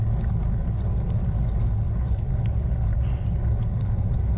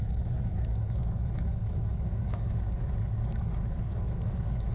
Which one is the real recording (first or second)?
first